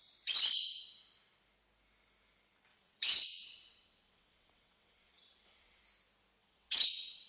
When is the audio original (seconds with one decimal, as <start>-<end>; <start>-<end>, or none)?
0.0-2.7; 5.8-6.4

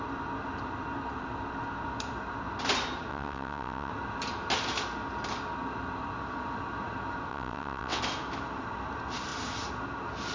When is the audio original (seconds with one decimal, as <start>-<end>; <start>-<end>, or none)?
0.0-3.1; 3.9-7.3; 8.0-10.3

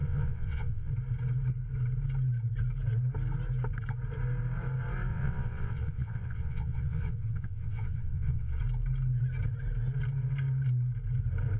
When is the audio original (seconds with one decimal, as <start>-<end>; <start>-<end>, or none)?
0.9-5.1; 8.6-11.6

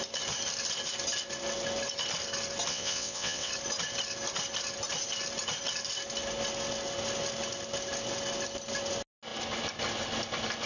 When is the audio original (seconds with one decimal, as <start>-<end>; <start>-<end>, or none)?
0.0-2.7; 3.5-10.7

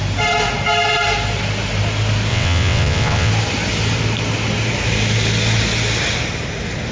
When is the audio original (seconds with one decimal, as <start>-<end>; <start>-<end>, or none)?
0.0-2.3; 3.3-6.9

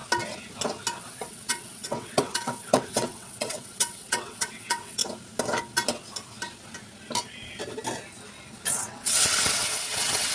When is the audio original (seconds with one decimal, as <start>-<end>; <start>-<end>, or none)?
0.0-1.0; 5.0-8.7